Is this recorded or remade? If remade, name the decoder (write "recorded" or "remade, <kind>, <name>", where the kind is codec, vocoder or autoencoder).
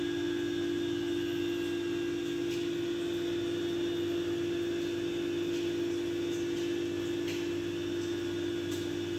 recorded